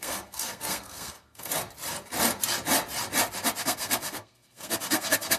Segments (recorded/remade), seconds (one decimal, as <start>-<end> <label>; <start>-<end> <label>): 0.0-1.5 remade; 1.5-3.6 recorded; 3.6-5.4 remade